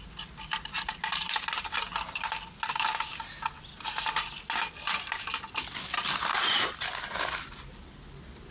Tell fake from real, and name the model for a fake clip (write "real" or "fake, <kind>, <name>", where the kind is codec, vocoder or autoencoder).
real